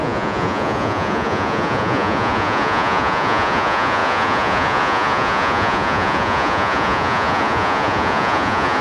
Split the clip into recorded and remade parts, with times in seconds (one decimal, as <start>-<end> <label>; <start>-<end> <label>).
0.0-8.8 remade